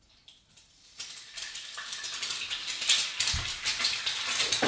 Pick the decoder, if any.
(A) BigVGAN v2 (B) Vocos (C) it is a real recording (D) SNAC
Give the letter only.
C